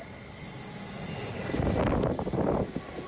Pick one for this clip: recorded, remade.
recorded